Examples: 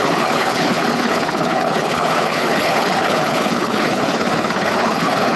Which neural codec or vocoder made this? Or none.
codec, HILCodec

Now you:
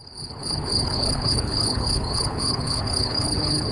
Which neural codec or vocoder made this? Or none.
codec, HILCodec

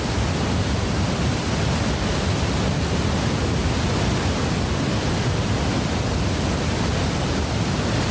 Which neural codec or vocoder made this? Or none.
none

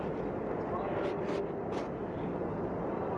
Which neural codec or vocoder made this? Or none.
none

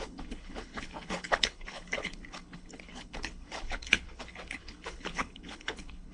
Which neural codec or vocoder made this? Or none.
codec, HILCodec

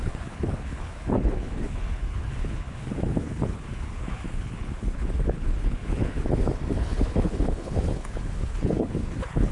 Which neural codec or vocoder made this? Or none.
codec, HILCodec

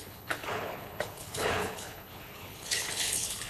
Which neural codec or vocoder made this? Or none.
codec, HILCodec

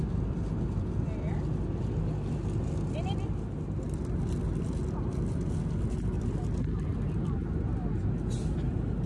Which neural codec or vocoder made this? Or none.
none